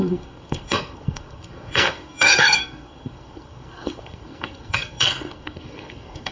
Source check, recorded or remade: remade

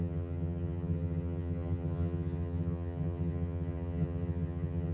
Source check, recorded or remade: remade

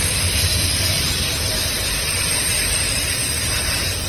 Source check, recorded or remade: recorded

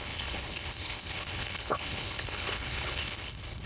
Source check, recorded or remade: remade